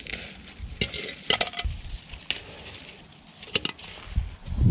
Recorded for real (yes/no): yes